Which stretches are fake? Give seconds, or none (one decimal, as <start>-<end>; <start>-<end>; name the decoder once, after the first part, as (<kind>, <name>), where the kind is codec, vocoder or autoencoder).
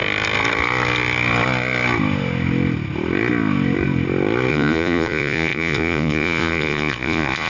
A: 4.5-7.5 (vocoder, Vocos)